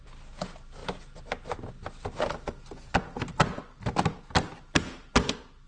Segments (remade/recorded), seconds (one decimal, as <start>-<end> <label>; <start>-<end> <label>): 0.0-5.7 recorded